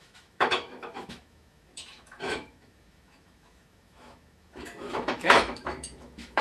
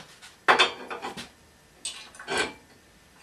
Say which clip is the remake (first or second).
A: first